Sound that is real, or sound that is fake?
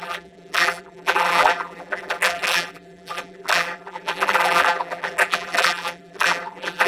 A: fake